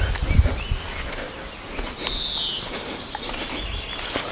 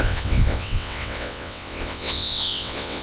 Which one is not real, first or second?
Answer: second